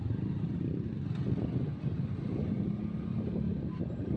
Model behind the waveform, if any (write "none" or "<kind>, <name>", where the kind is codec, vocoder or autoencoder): none